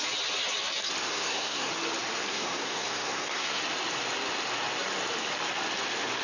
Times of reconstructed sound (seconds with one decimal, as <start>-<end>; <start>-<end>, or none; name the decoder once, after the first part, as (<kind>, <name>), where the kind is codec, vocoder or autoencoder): 1.1-1.7 (codec, SNAC); 2.3-3.6

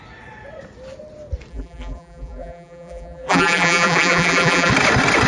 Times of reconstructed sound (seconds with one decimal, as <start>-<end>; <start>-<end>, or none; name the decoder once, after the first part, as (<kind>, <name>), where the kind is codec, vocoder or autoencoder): 1.5-4.7 (vocoder, BigVGAN v2)

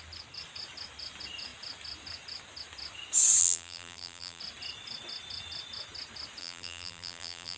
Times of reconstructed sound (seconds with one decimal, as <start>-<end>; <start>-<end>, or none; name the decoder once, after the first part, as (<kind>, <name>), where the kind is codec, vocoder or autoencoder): 3.4-4.4 (vocoder, BigVGAN v2); 6.4-7.6